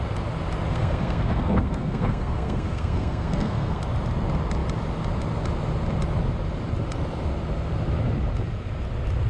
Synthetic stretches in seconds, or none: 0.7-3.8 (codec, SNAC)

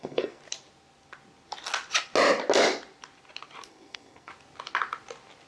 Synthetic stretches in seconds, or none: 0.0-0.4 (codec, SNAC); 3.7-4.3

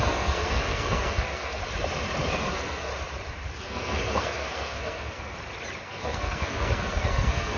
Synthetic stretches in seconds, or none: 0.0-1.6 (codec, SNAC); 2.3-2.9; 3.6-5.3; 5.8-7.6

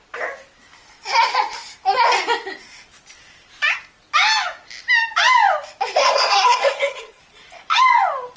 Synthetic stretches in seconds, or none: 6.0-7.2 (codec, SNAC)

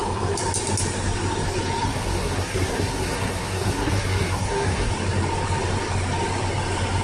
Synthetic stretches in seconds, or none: 1.8-4.9 (codec, SNAC)

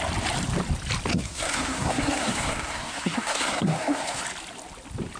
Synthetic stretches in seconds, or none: 1.1-4.2 (codec, SNAC)